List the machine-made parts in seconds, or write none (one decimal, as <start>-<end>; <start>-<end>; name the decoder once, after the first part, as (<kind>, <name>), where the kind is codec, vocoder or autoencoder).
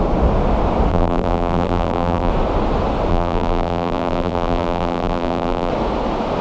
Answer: 0.9-2.3 (vocoder, BigVGAN v2); 3.1-5.7